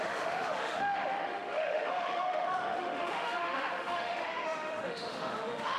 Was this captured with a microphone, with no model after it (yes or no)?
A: no